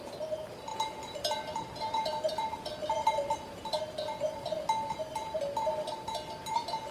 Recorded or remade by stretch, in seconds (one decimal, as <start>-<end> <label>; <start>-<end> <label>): 0.0-0.7 recorded; 0.7-3.8 remade; 3.8-6.9 recorded